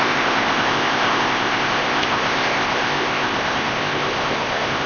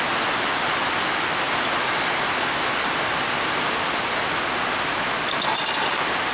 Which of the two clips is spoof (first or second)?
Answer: first